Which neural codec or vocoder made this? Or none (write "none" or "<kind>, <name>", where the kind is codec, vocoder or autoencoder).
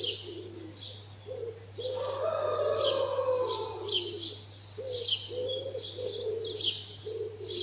none